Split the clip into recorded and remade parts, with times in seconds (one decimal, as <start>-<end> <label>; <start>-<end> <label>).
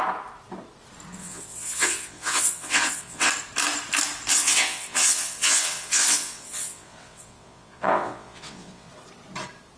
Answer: 0.0-1.2 recorded; 1.2-3.3 remade; 3.3-4.3 recorded; 4.3-8.9 remade; 8.9-9.8 recorded